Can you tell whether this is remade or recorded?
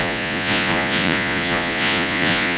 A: remade